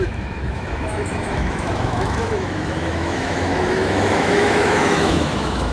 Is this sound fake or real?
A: fake